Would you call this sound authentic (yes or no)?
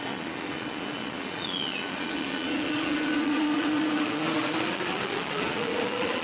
no